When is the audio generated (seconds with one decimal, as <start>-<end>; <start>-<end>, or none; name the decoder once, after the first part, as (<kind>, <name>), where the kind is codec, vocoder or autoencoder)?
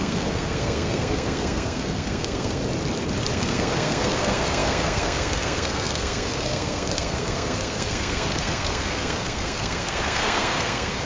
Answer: 0.0-2.6 (codec, SNAC); 3.3-11.1